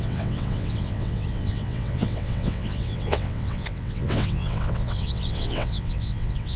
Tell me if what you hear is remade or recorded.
remade